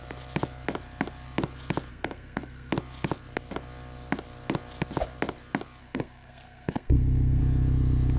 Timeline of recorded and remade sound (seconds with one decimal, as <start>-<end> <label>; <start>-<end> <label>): 0.0-1.9 recorded; 1.9-2.7 remade; 2.7-5.8 recorded; 5.8-7.4 remade; 7.4-8.2 recorded